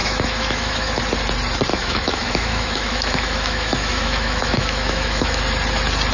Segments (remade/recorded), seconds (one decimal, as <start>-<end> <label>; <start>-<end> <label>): 0.0-1.0 remade; 1.0-1.7 recorded; 1.7-5.4 remade; 5.4-6.1 recorded